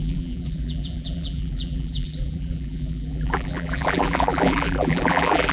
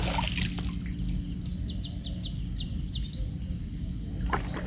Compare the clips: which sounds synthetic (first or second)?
first